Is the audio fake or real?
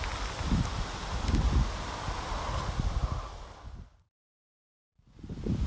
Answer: real